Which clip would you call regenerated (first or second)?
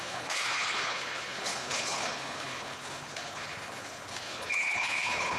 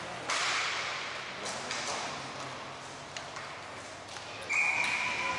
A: first